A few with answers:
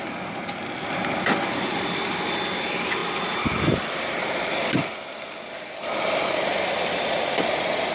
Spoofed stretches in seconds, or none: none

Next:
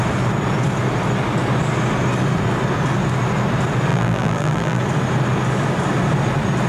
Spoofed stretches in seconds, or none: 3.9-4.8 (vocoder, BigVGAN v2)

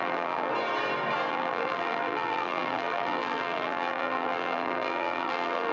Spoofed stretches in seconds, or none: 0.0-0.5 (vocoder, BigVGAN v2); 1.3-5.7

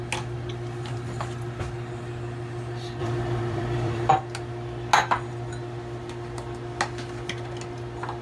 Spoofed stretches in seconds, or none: 3.0-4.1 (vocoder, BigVGAN v2)

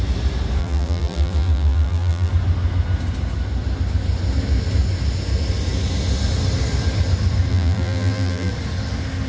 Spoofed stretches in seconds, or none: 0.6-2.3 (vocoder, BigVGAN v2); 7.5-8.5

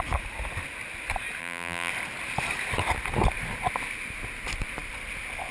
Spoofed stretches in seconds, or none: 1.4-1.9 (vocoder, BigVGAN v2)

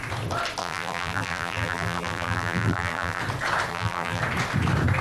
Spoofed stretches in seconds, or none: 0.6-3.2 (vocoder, BigVGAN v2); 3.7-4.2

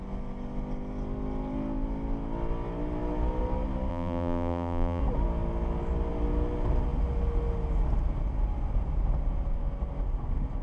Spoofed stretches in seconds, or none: 3.9-5.0 (vocoder, BigVGAN v2)